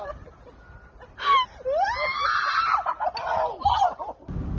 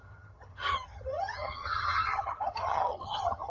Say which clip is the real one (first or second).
first